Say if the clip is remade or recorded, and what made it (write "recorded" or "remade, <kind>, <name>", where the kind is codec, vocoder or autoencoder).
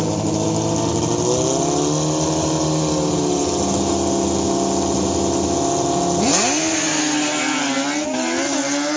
recorded